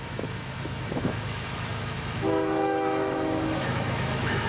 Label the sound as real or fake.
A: fake